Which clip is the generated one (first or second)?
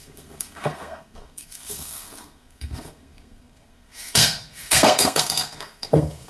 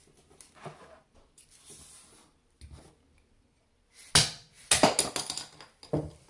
first